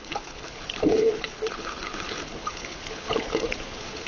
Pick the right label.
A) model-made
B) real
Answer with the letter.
A